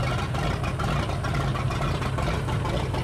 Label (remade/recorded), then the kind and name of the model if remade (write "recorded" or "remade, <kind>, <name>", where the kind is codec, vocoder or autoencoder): remade, vocoder, BigVGAN v2